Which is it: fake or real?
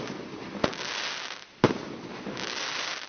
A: real